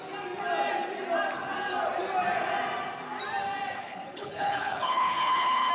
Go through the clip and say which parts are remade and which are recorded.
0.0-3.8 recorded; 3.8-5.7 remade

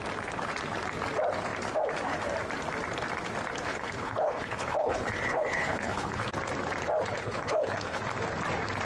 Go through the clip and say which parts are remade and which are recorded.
0.0-3.7 recorded; 3.7-6.3 remade; 6.3-7.1 recorded; 7.1-8.0 remade; 8.0-8.8 recorded

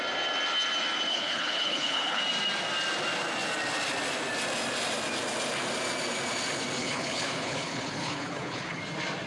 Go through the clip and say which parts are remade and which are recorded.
0.0-1.1 recorded; 1.1-2.2 remade; 2.2-6.8 recorded; 6.8-8.8 remade; 8.8-9.3 recorded

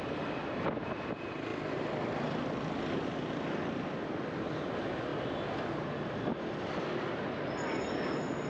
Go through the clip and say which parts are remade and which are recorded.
0.0-8.5 recorded